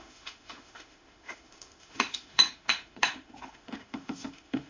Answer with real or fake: fake